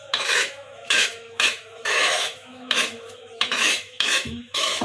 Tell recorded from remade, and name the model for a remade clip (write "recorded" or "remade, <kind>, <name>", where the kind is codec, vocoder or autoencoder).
remade, autoencoder, DAC-VAE